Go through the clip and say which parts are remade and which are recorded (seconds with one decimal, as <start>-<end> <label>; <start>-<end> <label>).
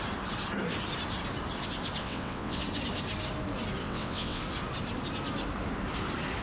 0.0-2.0 recorded; 2.0-2.6 remade; 2.6-3.8 recorded; 3.8-4.4 remade; 4.4-6.4 recorded